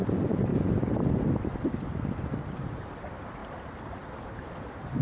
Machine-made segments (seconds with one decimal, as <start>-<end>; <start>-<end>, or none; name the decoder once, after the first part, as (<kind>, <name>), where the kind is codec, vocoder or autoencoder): 0.0-0.5 (vocoder, BigVGAN v2); 2.5-3.4; 4.2-5.0

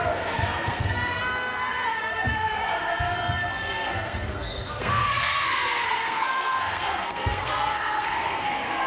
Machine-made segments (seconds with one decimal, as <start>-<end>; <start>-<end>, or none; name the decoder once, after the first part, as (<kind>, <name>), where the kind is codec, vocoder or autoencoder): 0.0-8.9 (codec, SNAC)

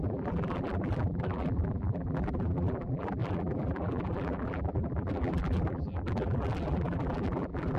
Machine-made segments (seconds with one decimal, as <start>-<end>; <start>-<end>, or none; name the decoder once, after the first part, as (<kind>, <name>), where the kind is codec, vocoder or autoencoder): 0.0-7.8 (vocoder, BigVGAN v2)

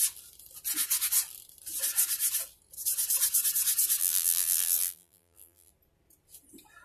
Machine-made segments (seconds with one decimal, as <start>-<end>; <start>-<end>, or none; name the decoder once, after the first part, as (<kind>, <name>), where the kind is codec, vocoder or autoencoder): 4.0-5.7 (vocoder, BigVGAN v2)

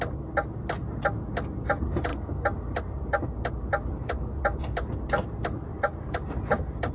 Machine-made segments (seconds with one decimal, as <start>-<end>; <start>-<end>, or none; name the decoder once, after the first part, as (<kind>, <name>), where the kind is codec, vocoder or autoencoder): 5.7-6.9 (vocoder, BigVGAN v2)

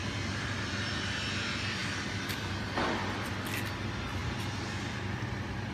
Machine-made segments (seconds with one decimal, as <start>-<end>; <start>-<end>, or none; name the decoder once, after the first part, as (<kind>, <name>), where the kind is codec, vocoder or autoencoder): none

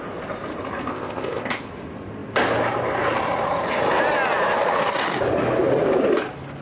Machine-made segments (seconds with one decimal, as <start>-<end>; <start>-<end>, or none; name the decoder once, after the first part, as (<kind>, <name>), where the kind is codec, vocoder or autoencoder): 0.9-1.6 (codec, ZipCodec)

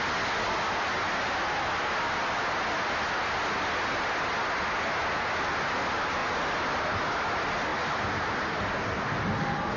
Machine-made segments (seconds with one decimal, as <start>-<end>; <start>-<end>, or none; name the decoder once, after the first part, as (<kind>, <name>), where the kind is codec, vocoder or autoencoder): none